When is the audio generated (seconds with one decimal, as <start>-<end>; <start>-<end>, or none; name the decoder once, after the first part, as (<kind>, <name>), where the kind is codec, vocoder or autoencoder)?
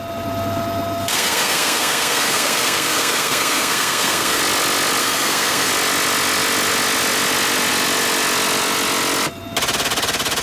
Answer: 1.1-4.4 (codec, SNAC); 5.0-5.7